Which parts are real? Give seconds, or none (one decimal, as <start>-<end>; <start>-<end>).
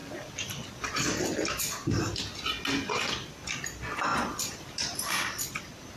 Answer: 0.0-6.0